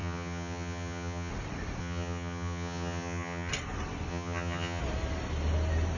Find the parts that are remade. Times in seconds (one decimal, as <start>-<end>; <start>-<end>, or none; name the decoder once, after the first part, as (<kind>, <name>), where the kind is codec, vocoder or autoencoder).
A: 0.0-1.3 (vocoder, HiFi-GAN); 1.8-3.5; 4.1-4.8